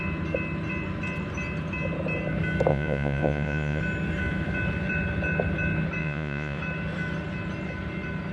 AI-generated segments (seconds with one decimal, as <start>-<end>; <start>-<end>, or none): 2.7-3.8; 6.0-6.6